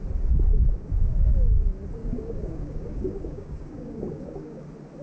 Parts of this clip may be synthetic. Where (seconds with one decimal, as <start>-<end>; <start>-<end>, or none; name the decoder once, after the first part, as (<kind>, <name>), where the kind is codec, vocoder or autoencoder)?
0.5-1.6 (codec, DAC); 2.0-4.6